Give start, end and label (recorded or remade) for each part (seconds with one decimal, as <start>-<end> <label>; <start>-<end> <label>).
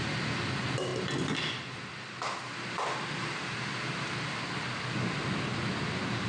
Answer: 0.0-6.3 recorded